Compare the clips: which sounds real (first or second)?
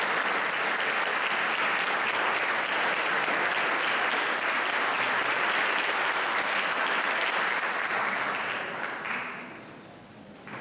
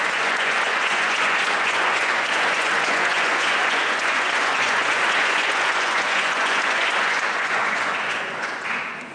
first